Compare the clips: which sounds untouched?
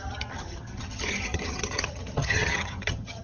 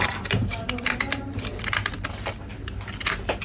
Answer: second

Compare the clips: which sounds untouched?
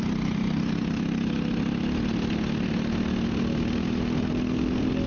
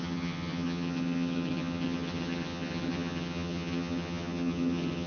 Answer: first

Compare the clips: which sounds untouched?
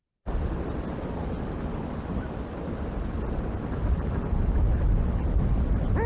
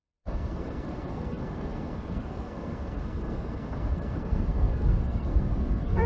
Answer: first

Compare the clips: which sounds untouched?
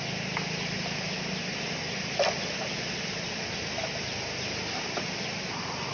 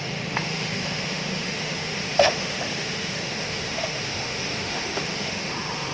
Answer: first